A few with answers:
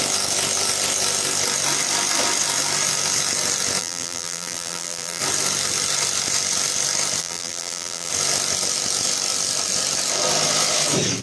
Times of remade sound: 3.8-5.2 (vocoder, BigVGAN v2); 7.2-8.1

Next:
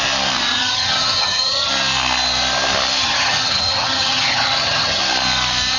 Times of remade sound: 0.5-1.7 (vocoder, HiFi-GAN); 3.0-5.0